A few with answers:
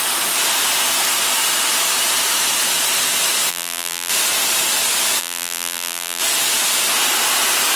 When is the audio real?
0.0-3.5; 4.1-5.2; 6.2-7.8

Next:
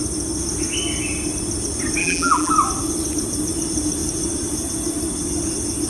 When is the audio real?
0.0-2.0; 2.5-5.9

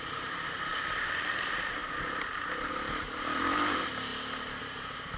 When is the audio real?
1.8-2.7; 4.1-4.6

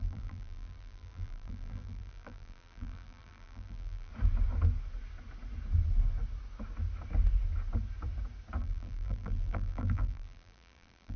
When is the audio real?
4.1-8.6

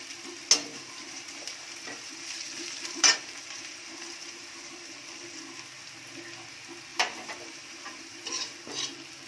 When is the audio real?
0.0-0.7; 5.4-6.9; 8.6-9.3